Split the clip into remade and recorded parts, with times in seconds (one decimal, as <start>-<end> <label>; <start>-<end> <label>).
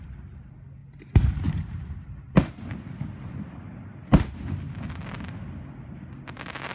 0.0-0.8 recorded; 0.8-2.3 remade; 2.3-6.7 recorded